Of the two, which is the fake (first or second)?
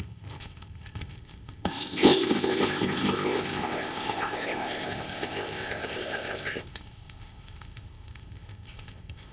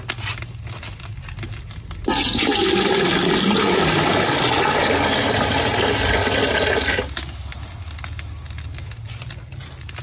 first